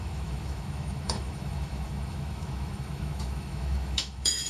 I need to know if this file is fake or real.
fake